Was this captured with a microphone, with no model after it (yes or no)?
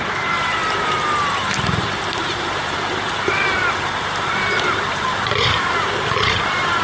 no